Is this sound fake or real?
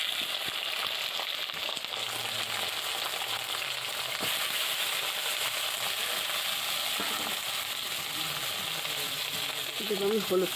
real